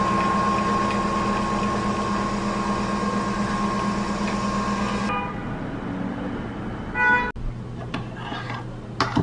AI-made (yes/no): no